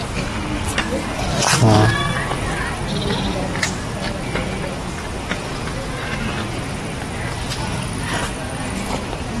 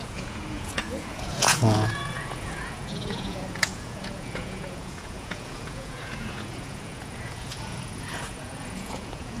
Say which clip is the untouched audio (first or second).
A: first